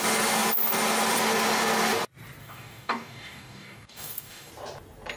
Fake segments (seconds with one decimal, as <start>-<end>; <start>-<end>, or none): 2.4-4.5